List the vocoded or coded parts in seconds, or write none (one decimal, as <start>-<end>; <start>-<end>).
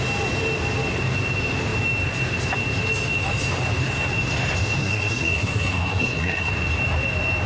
4.8-6.5